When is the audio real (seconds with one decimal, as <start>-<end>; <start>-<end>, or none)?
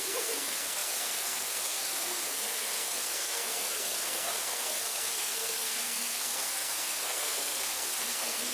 none